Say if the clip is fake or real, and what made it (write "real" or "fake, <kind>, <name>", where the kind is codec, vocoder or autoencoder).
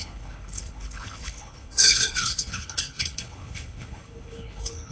fake, codec, HILCodec